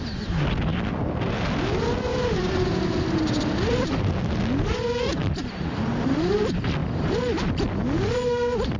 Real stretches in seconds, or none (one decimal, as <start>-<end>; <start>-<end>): 0.0-2.1; 4.1-5.4; 6.3-6.8; 7.4-8.8